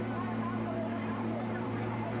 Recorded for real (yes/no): no